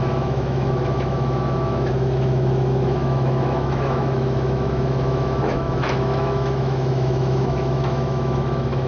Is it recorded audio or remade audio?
remade